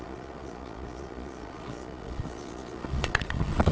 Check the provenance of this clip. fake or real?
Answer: fake